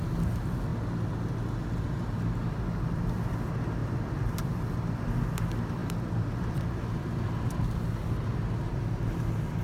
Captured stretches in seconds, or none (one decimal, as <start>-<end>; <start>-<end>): 0.0-3.8; 4.7-5.8; 7.3-9.6